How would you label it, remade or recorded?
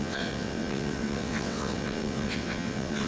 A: remade